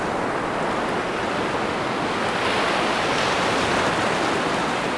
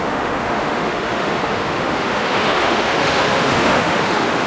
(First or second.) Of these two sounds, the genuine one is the first